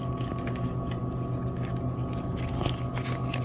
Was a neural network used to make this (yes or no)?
no